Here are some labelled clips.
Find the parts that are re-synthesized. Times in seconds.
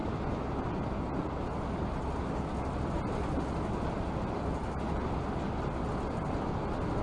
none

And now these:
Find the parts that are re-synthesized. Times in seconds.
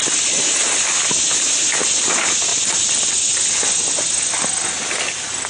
none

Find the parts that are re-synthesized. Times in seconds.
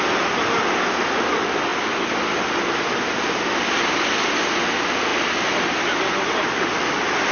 none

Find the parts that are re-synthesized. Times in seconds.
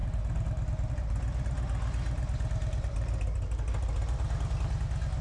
0.0-0.9 (vocoder, BigVGAN v2)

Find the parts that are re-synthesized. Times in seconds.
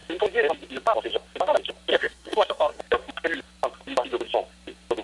1.9-2.8 (codec, SNAC)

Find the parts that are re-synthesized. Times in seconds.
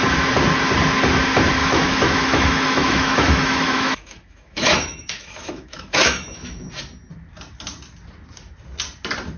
1.6-6.7 (autoencoder, DAC-VAE)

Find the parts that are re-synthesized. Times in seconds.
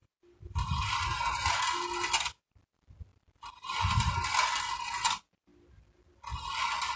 none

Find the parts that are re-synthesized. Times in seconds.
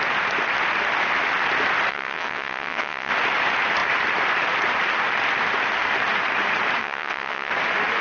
1.9-3.1 (vocoder, WaveNeXt); 6.8-7.5